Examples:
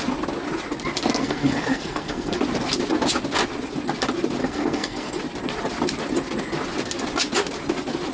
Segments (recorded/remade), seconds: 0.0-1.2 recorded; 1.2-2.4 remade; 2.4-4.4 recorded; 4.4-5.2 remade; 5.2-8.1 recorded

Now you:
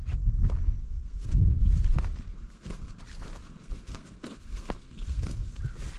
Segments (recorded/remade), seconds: 0.0-0.8 recorded; 0.8-1.7 remade; 1.7-2.3 recorded; 2.3-3.0 remade; 3.0-3.4 recorded; 3.4-5.6 remade; 5.6-6.0 recorded

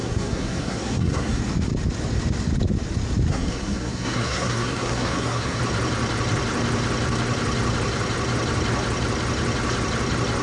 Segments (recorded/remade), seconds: 0.0-1.4 remade; 1.4-3.3 recorded; 3.3-5.6 remade; 5.6-10.4 recorded

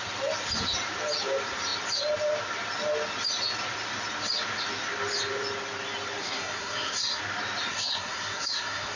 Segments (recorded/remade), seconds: 0.0-6.2 recorded; 6.2-7.2 remade; 7.2-7.7 recorded; 7.7-9.0 remade